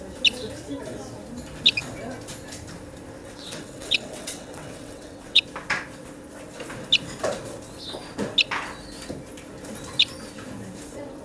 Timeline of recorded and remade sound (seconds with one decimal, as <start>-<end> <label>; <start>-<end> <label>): 0.0-3.2 recorded; 3.2-5.4 remade; 5.4-11.2 recorded